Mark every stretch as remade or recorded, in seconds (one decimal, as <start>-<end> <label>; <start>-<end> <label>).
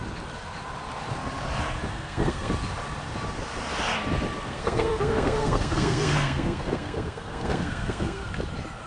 0.0-1.9 recorded; 1.9-2.5 remade; 2.5-4.5 recorded; 4.5-8.3 remade; 8.3-8.9 recorded